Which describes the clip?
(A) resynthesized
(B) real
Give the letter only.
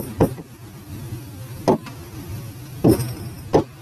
B